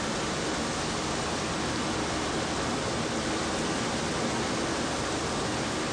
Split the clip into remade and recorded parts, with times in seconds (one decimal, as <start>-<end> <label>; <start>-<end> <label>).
0.0-5.9 recorded